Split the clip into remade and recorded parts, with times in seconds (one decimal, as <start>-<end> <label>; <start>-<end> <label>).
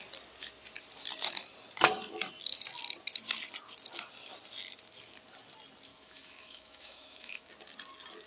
0.0-5.9 recorded; 5.9-7.5 remade; 7.5-8.3 recorded